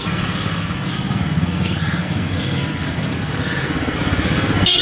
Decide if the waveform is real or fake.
fake